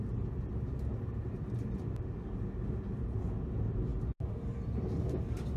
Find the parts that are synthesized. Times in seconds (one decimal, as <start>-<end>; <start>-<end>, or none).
none